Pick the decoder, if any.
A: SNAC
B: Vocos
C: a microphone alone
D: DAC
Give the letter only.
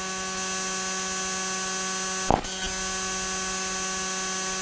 C